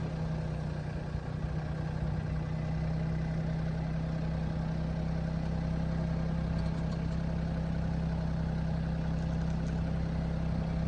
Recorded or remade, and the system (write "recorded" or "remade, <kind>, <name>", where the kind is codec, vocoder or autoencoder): recorded